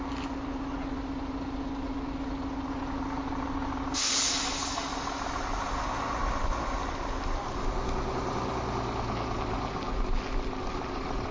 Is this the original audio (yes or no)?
yes